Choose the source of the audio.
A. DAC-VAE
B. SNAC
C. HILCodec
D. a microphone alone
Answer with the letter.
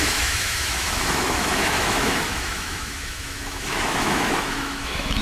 A